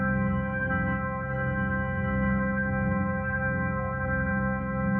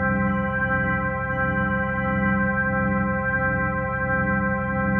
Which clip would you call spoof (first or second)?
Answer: first